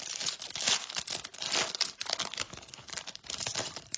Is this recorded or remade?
recorded